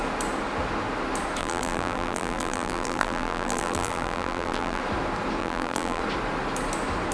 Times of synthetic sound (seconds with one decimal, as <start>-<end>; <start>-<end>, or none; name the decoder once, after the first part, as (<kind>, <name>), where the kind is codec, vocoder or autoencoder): 1.4-4.8 (vocoder, BigVGAN v2); 5.4-6.0